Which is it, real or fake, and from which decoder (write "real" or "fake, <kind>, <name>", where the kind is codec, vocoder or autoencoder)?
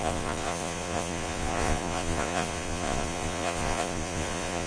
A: fake, vocoder, Vocos